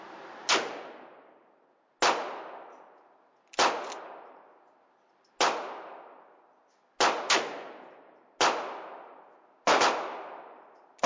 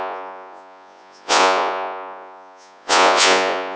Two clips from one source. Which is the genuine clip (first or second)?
first